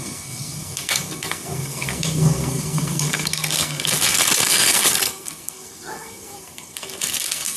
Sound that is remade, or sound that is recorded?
remade